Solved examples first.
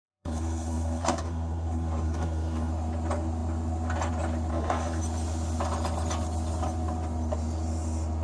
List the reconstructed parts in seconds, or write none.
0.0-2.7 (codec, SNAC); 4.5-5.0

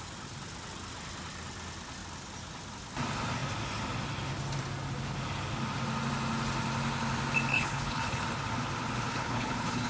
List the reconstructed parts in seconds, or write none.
7.5-8.2 (codec, HILCodec); 9.1-9.9

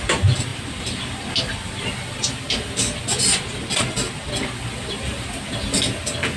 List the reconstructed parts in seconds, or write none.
none

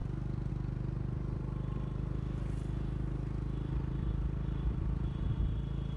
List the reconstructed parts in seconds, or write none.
none

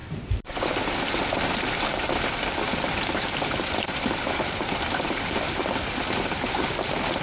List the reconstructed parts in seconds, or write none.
0.0-7.2 (vocoder, BigVGAN v2)

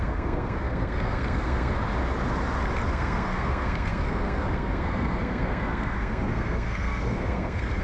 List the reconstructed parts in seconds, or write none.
0.0-1.8 (codec, SNAC); 2.9-7.8